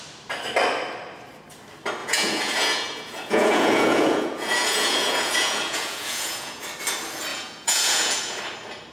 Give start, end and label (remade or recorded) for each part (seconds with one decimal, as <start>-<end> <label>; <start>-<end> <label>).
0.0-2.0 recorded; 2.0-6.6 remade; 6.6-7.3 recorded; 7.3-8.4 remade; 8.4-8.9 recorded